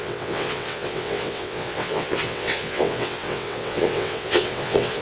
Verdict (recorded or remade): remade